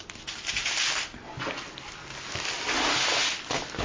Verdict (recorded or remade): recorded